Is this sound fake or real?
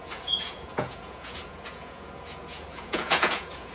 fake